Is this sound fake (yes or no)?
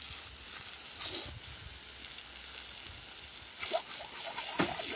no